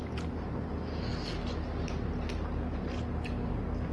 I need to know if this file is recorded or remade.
recorded